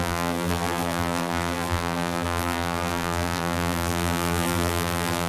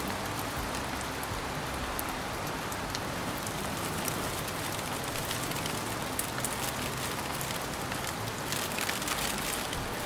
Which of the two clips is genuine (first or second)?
second